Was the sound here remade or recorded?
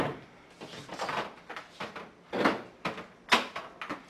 recorded